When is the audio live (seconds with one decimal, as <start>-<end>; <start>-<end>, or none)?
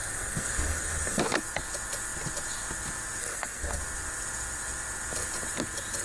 1.2-3.2; 3.8-6.0